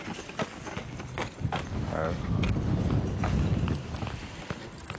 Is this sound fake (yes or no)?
no